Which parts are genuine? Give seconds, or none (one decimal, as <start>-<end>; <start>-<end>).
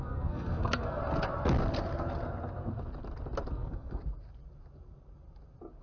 1.0-3.5; 4.0-5.8